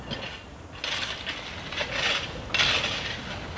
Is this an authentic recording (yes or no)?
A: yes